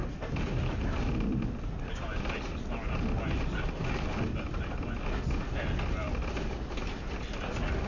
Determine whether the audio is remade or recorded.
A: recorded